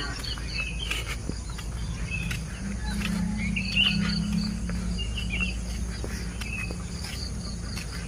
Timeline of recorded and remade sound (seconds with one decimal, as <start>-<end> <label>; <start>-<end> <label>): 0.0-1.2 recorded; 1.2-1.8 remade; 1.8-8.1 recorded